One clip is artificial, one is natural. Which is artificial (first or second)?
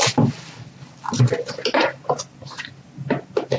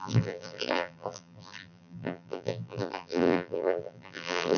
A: second